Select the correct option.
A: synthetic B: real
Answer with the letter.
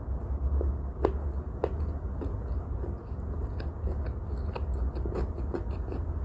B